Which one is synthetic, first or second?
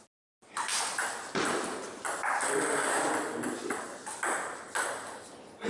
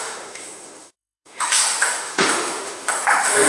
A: second